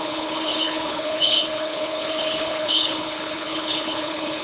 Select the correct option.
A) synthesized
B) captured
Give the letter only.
A